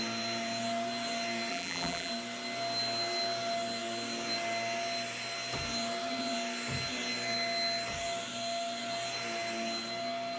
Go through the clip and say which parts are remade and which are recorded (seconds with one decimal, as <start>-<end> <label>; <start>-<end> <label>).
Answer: 0.0-1.5 recorded; 1.5-2.1 remade; 2.1-10.4 recorded